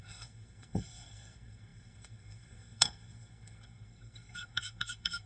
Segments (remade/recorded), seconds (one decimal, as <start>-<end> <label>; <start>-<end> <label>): 0.0-5.3 remade